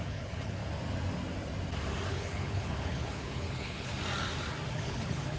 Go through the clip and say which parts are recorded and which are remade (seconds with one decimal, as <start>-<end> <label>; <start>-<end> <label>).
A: 0.0-0.6 remade; 0.6-2.1 recorded; 2.1-3.9 remade; 3.9-4.7 recorded; 4.7-5.4 remade